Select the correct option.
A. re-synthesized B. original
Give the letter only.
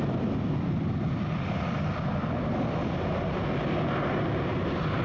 B